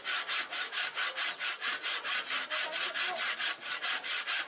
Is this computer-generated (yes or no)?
no